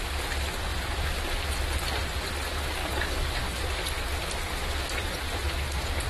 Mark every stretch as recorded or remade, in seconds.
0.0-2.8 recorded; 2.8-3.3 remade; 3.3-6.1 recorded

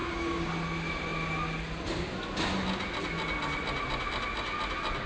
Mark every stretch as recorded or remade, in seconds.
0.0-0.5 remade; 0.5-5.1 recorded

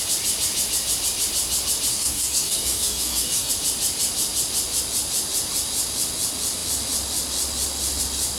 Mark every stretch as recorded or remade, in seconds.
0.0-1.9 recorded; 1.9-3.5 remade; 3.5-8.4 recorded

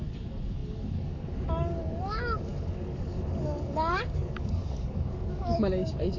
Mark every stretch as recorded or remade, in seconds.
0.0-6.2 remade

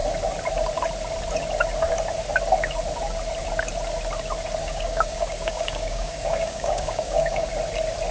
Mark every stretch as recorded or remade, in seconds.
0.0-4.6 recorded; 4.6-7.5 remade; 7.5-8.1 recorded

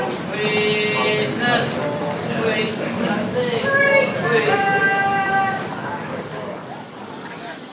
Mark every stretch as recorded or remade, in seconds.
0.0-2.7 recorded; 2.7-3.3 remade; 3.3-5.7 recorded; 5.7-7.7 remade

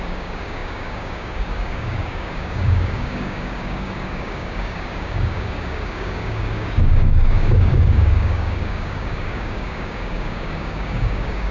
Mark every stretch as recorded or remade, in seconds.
0.0-11.5 remade

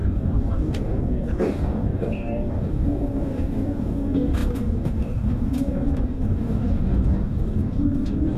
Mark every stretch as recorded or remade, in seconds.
0.0-8.4 remade